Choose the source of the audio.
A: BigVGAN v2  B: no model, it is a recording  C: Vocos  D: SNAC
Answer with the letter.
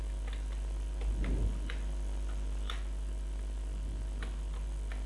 B